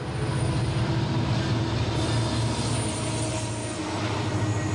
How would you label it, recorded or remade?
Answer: recorded